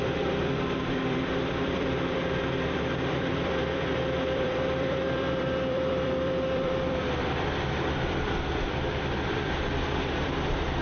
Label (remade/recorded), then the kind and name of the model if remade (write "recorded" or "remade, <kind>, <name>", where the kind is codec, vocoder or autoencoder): remade, vocoder, BigVGAN v2